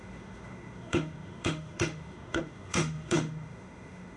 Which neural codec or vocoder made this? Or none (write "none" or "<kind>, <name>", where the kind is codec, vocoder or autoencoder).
autoencoder, DAC-VAE